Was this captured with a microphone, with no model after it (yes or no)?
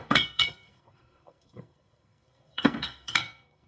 no